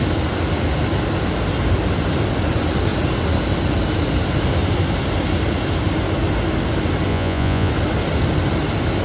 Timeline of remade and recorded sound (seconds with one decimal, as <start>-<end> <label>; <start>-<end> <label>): 0.0-7.1 recorded; 7.1-7.7 remade; 7.7-9.0 recorded